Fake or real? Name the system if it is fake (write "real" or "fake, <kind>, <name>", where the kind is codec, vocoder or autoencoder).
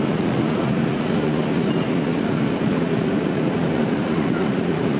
fake, vocoder, Vocos